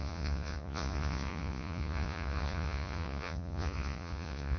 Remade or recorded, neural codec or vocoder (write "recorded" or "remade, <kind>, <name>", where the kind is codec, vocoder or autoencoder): remade, vocoder, Vocos